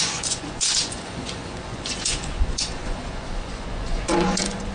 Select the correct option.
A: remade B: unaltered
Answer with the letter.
A